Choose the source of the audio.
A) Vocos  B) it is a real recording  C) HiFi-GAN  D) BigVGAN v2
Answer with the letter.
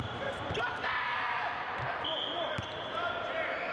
D